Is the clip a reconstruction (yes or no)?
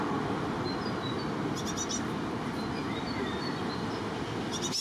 no